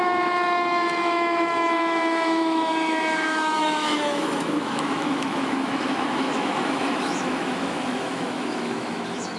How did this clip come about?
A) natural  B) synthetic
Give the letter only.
B